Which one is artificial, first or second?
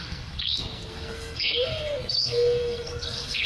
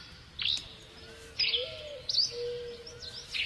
first